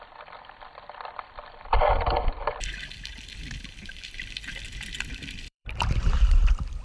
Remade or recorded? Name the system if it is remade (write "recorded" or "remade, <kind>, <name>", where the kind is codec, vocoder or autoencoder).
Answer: remade, vocoder, BigVGAN v2